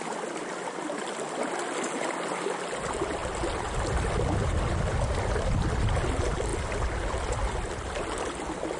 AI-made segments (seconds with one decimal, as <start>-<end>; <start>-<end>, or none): none